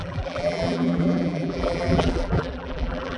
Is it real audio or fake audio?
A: fake